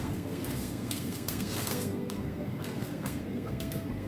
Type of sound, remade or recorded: remade